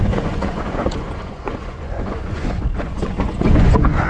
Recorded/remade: remade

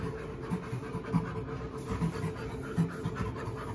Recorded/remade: recorded